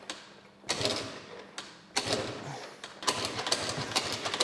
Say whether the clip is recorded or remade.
recorded